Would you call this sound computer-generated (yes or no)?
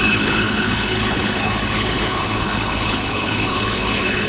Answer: yes